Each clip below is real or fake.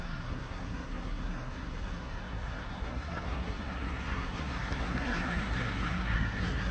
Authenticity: fake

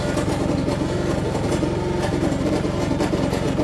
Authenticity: real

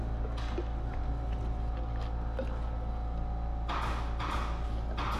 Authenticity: real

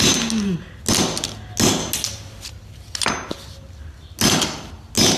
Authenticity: real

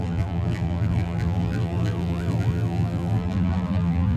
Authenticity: fake